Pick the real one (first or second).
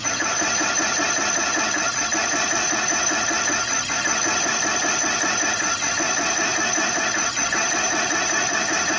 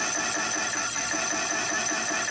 second